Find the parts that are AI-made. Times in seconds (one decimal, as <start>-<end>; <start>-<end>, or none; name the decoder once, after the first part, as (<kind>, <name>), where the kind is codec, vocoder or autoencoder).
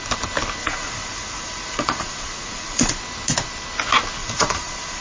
0.6-3.0 (vocoder, Vocos); 4.2-5.0